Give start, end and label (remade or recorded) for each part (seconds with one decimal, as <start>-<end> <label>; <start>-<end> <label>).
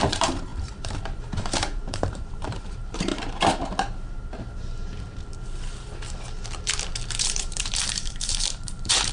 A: 0.0-3.1 remade; 3.1-7.2 recorded; 7.2-9.1 remade